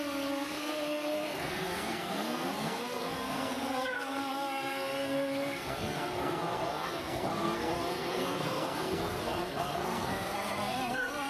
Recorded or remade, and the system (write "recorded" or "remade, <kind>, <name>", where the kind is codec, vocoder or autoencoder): remade, codec, SNAC